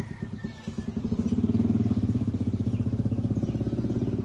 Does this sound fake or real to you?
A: fake